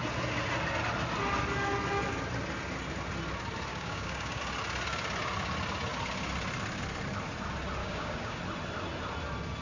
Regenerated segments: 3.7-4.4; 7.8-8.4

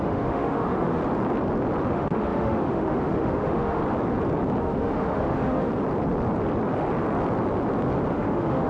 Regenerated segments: 0.0-1.0; 1.9-3.8; 4.6-5.7; 8.1-8.7

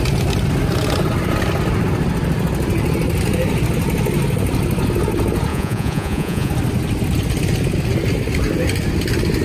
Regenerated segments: 5.5-6.5

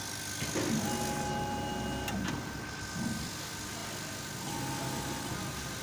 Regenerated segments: none

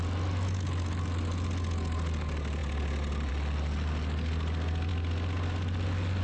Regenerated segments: none